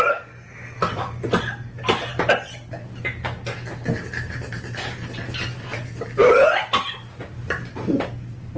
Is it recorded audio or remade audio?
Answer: recorded